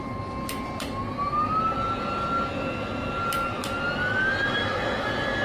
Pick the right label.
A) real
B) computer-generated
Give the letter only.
A